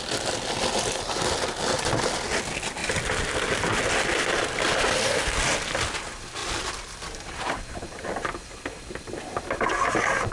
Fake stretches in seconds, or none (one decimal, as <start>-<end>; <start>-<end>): 6.4-9.8